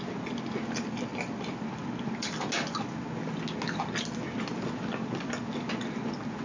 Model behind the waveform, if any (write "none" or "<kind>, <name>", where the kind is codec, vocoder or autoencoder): none